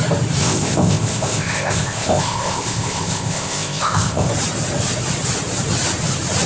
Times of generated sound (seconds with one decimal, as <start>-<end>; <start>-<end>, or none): 0.4-4.3